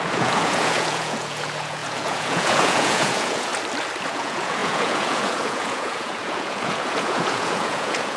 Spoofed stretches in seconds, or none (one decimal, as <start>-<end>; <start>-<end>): 0.0-3.5; 4.0-8.2